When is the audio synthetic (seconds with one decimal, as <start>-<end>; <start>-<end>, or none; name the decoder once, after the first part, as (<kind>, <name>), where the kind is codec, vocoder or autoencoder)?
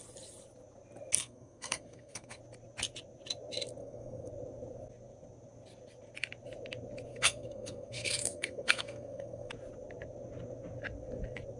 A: 1.2-2.4 (codec, SNAC); 3.8-4.3; 7.1-9.5